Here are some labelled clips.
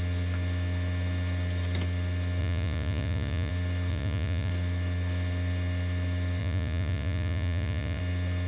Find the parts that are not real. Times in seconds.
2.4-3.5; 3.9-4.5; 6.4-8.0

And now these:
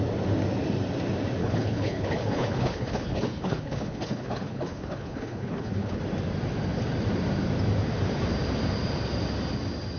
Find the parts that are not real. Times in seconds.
1.4-6.0

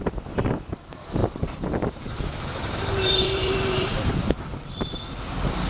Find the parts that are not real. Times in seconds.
1.2-4.1

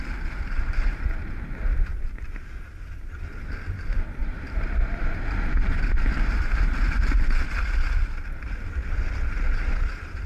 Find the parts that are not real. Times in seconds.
4.2-5.1

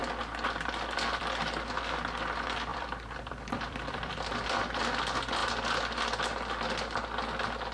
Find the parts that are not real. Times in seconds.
2.7-4.3